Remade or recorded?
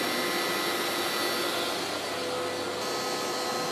recorded